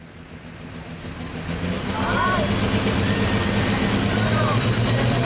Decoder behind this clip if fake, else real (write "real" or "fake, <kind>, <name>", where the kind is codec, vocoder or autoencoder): real